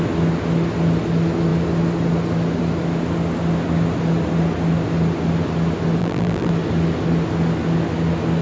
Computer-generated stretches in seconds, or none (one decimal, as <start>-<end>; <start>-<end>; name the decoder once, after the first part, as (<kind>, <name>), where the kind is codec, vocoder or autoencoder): 6.0-6.5 (vocoder, BigVGAN v2)

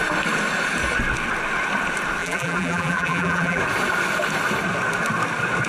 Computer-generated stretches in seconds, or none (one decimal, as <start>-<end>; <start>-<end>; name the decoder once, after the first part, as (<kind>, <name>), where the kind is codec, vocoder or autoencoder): 2.2-3.6 (vocoder, BigVGAN v2)

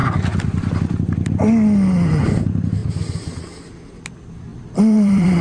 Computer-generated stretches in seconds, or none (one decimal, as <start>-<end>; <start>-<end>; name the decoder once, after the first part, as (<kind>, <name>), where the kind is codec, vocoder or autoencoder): 0.0-1.3 (vocoder, BigVGAN v2); 4.5-5.4

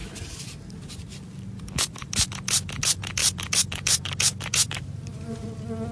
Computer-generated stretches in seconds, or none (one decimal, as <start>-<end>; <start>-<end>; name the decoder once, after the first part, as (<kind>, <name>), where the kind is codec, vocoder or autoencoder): 3.2-5.5 (vocoder, BigVGAN v2)

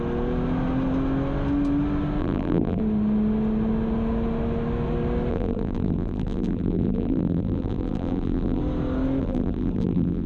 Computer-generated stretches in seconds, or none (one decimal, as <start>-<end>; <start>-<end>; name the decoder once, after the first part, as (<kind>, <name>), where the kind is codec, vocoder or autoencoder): 2.2-2.8 (vocoder, BigVGAN v2); 5.3-8.6; 9.2-10.3